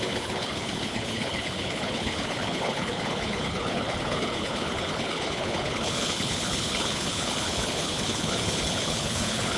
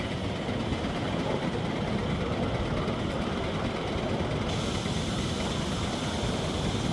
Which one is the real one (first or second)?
second